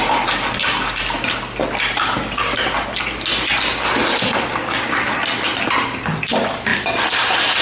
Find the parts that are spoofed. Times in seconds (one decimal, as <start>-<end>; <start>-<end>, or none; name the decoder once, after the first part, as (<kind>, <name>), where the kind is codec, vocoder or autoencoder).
none